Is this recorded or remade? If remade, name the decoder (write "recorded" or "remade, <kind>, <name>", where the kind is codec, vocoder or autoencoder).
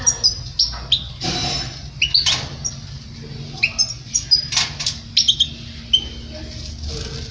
recorded